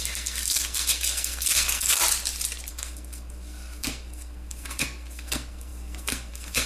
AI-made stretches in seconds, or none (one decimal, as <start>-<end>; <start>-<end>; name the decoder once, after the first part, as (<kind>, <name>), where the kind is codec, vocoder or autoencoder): 0.0-2.0 (codec, SNAC); 2.7-6.7